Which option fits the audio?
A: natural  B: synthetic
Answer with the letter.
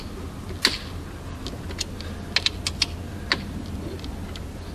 A